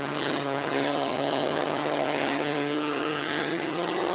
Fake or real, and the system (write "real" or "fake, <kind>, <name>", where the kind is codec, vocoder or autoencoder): fake, vocoder, HiFi-GAN